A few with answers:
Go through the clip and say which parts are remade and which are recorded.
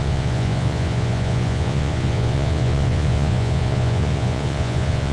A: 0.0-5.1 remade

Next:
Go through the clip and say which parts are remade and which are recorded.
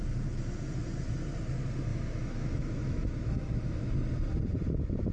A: 0.0-1.9 recorded; 1.9-4.0 remade; 4.0-5.1 recorded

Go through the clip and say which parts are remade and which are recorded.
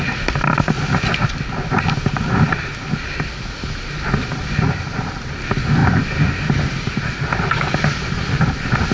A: 0.0-8.9 recorded